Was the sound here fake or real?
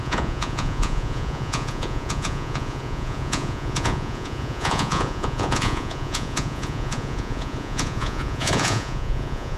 fake